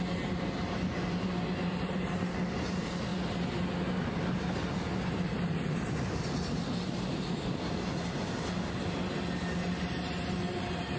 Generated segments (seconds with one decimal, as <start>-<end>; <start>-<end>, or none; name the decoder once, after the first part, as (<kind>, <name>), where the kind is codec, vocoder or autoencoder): none